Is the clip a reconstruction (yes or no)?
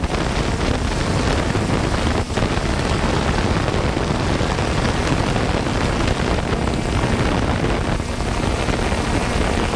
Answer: no